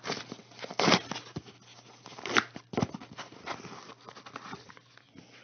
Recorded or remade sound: recorded